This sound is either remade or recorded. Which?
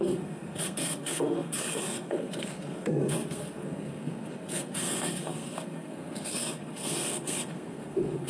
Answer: remade